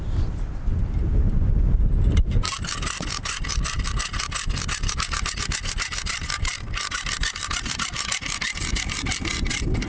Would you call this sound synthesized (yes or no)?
no